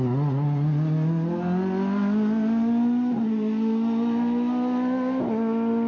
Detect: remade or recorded recorded